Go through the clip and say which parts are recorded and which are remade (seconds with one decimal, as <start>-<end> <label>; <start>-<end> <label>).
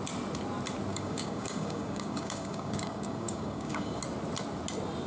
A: 0.0-0.9 recorded; 0.9-4.0 remade; 4.0-5.1 recorded